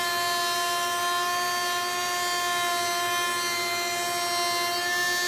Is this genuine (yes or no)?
yes